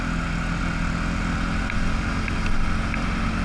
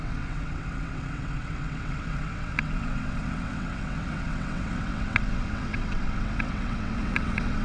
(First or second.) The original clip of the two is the first